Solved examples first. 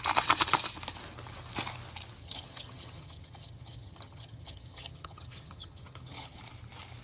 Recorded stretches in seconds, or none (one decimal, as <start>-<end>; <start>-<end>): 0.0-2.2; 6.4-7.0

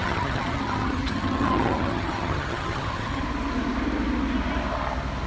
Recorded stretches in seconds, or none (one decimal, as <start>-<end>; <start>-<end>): 3.2-5.3

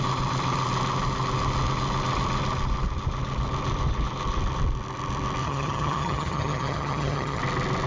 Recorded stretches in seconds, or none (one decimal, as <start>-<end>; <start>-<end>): 0.0-5.4; 7.4-7.9

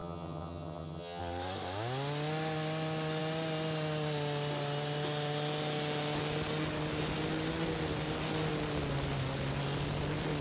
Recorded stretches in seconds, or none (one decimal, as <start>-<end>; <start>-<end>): 1.2-10.4

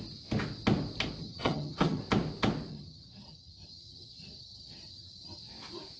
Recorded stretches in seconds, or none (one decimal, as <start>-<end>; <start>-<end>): 0.0-1.2; 2.0-2.7; 5.4-6.0

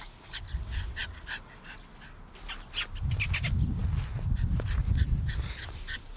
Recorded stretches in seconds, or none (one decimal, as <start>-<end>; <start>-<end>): 0.0-6.2

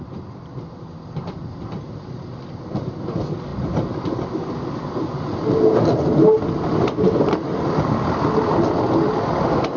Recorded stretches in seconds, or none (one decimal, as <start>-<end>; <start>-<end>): 0.0-9.8